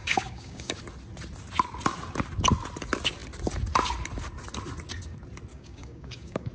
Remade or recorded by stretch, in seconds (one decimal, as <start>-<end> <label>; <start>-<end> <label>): 0.0-0.8 remade; 0.8-5.5 recorded; 5.5-6.5 remade